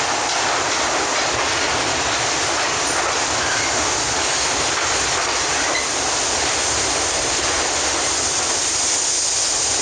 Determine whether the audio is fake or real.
real